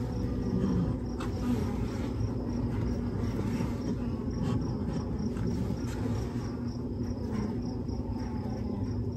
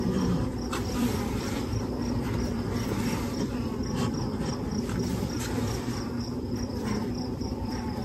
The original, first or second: first